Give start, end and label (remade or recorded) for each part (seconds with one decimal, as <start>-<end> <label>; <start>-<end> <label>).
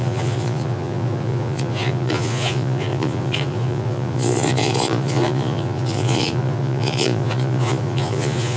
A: 0.0-8.6 remade